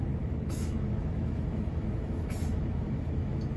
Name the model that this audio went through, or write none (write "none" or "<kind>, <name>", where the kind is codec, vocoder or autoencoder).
autoencoder, DAC-VAE